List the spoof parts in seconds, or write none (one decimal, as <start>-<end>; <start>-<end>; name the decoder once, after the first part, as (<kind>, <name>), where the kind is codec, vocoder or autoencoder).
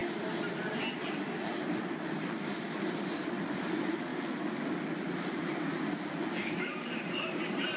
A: 2.1-4.1 (vocoder, BigVGAN v2); 6.5-7.8